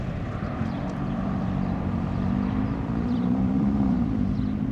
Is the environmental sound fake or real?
fake